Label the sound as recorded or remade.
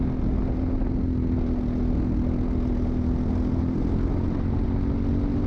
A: recorded